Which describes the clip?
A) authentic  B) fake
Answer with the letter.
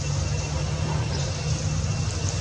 A